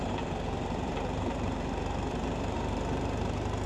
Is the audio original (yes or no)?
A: no